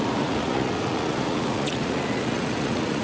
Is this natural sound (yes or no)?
no